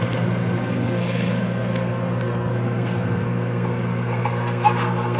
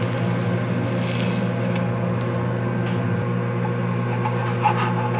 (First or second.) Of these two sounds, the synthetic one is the first